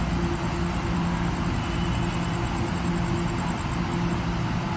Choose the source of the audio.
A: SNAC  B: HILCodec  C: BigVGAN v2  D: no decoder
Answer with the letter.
D